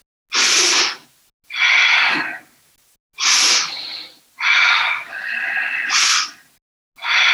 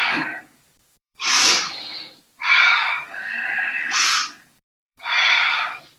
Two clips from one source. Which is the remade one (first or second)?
second